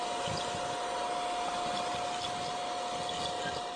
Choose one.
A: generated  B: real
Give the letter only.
B